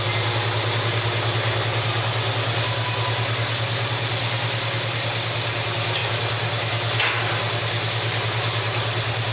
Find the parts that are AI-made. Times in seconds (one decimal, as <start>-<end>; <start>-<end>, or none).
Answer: none